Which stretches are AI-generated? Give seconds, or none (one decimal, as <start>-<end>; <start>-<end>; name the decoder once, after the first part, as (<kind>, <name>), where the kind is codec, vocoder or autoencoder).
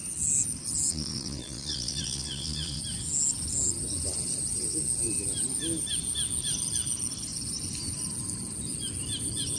0.9-2.8 (vocoder, Vocos)